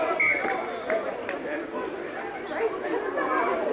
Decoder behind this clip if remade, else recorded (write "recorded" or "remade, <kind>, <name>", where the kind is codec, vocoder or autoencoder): recorded